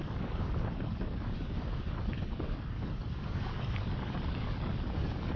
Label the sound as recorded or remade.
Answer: remade